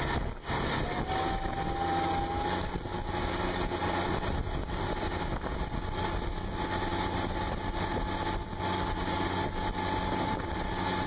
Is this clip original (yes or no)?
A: yes